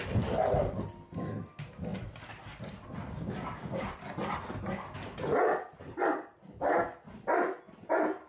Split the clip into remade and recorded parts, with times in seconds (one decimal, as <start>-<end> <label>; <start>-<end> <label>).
0.0-8.3 recorded